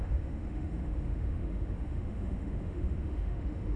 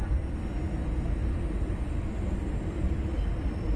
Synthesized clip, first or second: first